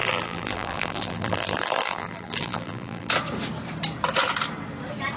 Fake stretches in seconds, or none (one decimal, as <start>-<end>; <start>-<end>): 0.0-3.1